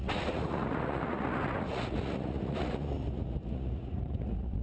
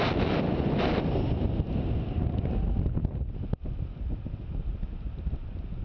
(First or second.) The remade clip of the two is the first